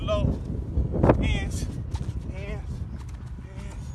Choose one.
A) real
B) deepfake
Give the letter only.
A